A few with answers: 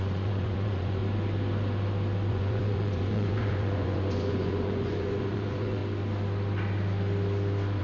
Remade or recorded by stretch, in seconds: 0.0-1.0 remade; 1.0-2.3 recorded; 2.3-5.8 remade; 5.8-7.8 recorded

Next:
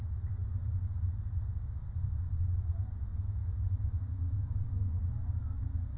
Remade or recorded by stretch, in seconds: 0.0-3.1 recorded; 3.1-5.0 remade; 5.0-6.0 recorded

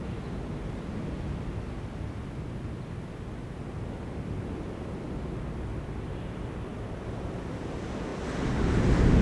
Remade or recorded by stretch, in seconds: 0.0-9.2 recorded

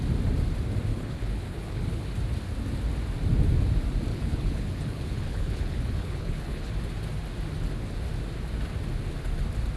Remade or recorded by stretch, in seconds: 0.0-0.9 recorded; 0.9-2.1 remade; 2.1-4.1 recorded; 4.1-6.7 remade; 6.7-9.8 recorded

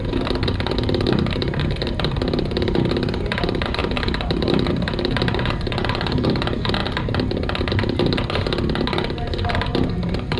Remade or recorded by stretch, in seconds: 0.0-6.8 remade; 6.8-9.9 recorded; 9.9-10.4 remade